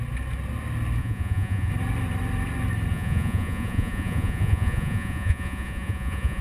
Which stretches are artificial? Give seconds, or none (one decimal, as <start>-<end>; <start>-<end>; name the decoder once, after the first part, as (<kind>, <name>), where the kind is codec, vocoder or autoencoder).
1.0-1.7 (vocoder, Vocos); 2.9-6.4